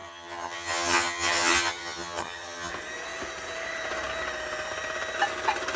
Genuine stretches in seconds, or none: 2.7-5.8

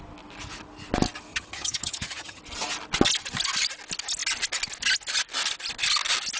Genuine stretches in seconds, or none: 0.0-1.3; 2.4-6.4

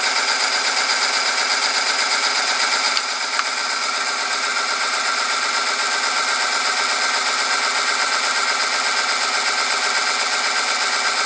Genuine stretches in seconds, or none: 0.0-11.3

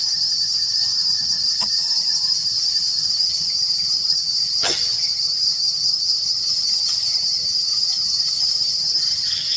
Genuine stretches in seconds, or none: none

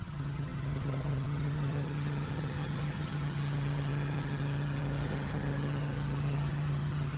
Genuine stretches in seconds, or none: none

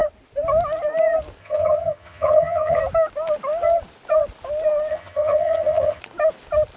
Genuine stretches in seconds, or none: 0.0-1.4; 2.8-4.9; 6.0-6.8